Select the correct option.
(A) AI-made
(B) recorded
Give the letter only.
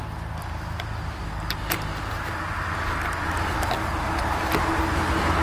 B